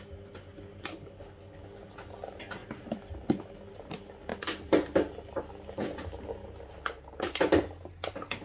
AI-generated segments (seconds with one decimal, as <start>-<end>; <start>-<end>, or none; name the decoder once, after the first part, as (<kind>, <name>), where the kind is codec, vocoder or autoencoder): 0.9-1.6 (codec, HILCodec)